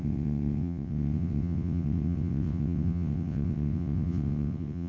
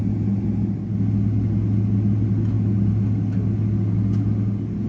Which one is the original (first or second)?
second